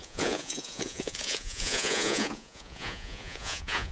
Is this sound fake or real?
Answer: fake